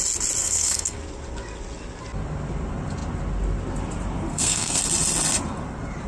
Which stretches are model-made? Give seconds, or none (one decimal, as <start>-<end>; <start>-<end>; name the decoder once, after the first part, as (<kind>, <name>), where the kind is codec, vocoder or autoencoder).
0.4-1.0 (codec, SNAC); 4.3-4.8